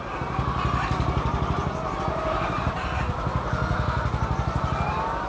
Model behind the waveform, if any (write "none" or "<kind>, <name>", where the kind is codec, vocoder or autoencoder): none